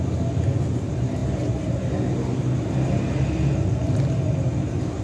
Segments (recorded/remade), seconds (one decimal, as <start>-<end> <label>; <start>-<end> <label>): 0.0-5.0 recorded